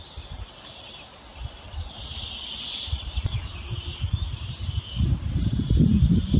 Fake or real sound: real